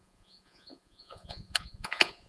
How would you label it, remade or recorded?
remade